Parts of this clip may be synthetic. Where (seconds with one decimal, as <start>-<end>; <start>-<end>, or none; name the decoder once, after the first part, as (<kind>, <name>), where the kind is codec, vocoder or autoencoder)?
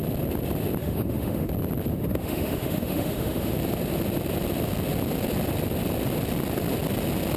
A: 0.8-1.5 (autoencoder, DAC-VAE); 1.9-3.5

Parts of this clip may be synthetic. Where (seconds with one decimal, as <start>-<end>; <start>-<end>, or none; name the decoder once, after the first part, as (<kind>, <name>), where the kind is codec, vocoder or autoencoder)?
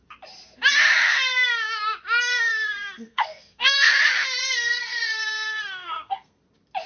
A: 2.3-3.9 (codec, SNAC); 4.4-6.4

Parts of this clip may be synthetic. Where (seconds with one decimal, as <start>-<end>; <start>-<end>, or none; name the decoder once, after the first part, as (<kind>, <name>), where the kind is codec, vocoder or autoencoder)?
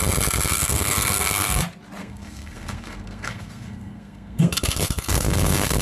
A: 0.5-1.6 (codec, SNAC); 2.0-5.8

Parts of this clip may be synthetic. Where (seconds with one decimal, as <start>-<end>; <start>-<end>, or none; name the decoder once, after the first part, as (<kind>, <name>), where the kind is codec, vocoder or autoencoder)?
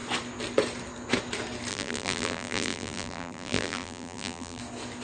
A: 1.7-4.6 (vocoder, BigVGAN v2)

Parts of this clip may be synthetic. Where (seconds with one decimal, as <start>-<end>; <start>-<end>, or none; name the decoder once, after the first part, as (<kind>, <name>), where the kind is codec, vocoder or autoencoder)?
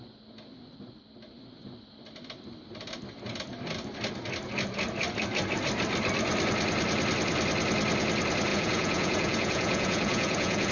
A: 8.5-10.7 (vocoder, Vocos)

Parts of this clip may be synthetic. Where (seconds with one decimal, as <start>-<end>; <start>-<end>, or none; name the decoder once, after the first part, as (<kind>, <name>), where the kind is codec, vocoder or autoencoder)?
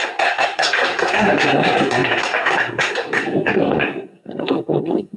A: 0.0-5.2 (codec, SNAC)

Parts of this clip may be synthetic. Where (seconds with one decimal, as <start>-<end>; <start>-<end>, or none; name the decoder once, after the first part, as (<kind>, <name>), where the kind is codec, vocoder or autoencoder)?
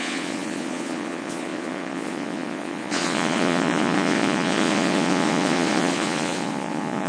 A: 0.0-7.1 (vocoder, Vocos)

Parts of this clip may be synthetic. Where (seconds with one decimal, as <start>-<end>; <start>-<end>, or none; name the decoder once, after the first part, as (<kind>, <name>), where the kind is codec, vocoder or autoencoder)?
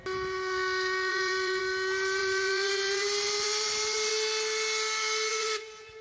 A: 1.1-1.6 (vocoder, BigVGAN v2); 2.2-4.1; 5.3-6.0